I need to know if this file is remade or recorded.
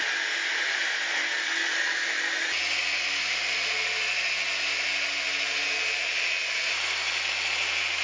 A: recorded